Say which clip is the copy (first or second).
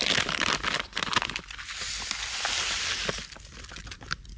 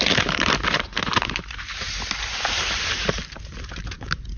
second